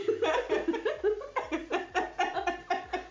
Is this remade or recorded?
recorded